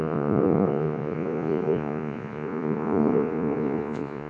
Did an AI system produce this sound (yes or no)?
yes